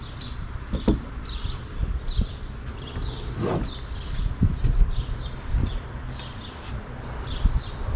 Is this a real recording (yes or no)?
no